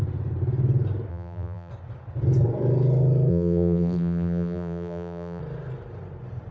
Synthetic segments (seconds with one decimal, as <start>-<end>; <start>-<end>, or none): 1.1-1.7; 3.3-5.4